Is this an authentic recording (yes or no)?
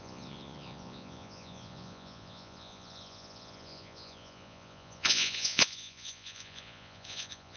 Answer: no